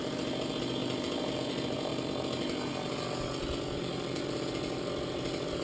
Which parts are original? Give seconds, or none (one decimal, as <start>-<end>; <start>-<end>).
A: 0.0-5.6